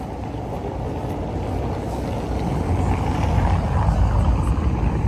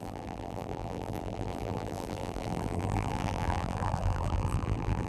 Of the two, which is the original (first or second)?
first